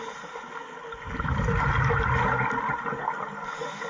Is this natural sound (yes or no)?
yes